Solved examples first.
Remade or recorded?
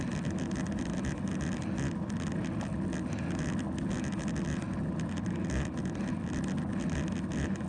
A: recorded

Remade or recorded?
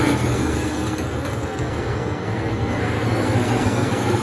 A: remade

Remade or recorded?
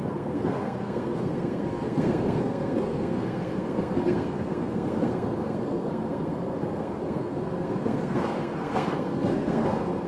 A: remade